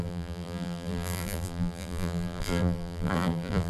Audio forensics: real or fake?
fake